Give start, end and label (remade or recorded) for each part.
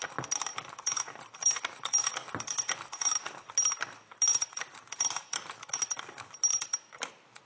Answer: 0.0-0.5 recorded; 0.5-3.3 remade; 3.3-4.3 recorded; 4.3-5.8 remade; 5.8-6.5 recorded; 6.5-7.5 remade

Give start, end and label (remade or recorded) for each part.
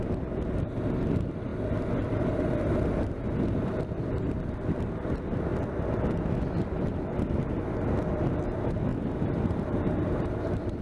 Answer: 0.0-8.9 recorded; 8.9-10.8 remade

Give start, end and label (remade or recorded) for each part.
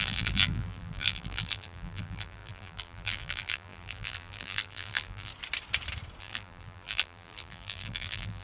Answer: 0.0-5.3 remade; 5.3-6.2 recorded; 6.2-8.4 remade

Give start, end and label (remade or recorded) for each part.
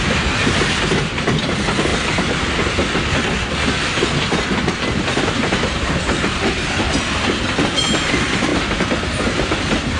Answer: 0.0-1.9 remade; 1.9-5.9 recorded; 5.9-10.0 remade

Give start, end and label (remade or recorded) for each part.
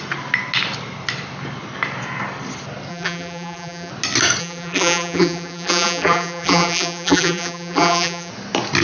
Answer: 0.0-2.9 recorded; 2.9-3.9 remade; 3.9-4.4 recorded; 4.4-8.3 remade; 8.3-8.8 recorded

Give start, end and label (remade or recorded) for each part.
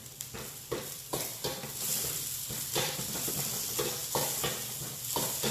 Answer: 0.0-3.3 remade; 3.3-5.5 recorded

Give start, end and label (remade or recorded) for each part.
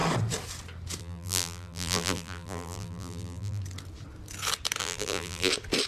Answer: 0.0-1.0 recorded; 1.0-3.6 remade; 3.6-4.8 recorded; 4.8-5.5 remade; 5.5-5.9 recorded